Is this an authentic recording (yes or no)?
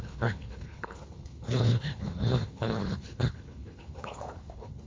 no